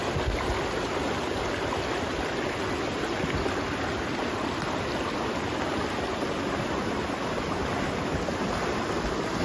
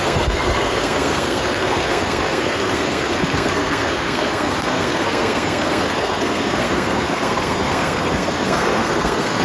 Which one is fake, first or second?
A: second